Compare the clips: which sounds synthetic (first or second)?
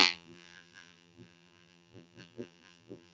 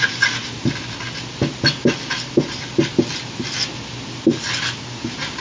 first